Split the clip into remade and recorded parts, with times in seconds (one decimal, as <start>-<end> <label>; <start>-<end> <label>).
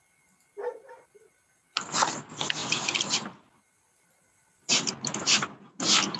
0.0-6.2 recorded